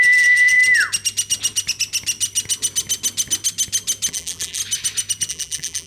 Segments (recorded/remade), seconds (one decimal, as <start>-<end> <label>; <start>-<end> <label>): 0.0-0.6 remade; 0.6-4.1 recorded; 4.1-4.6 remade; 4.6-5.3 recorded; 5.3-5.9 remade